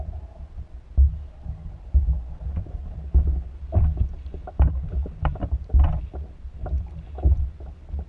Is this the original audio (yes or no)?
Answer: yes